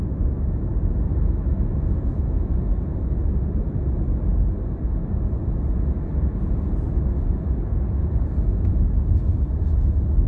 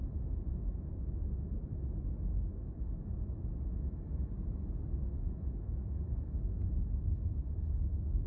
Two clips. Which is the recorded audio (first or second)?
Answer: first